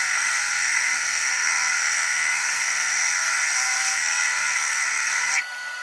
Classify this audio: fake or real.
fake